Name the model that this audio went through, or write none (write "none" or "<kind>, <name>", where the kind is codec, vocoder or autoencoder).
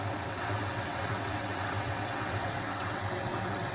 vocoder, WaveNeXt